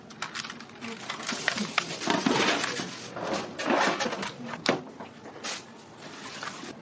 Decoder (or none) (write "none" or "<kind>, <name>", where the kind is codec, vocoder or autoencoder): none